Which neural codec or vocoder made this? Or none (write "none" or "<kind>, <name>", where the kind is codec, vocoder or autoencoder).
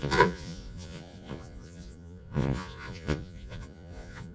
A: vocoder, Vocos